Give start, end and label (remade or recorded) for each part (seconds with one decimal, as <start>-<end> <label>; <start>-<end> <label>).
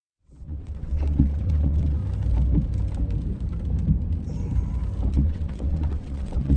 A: 0.0-2.0 remade; 2.0-5.1 recorded; 5.1-6.6 remade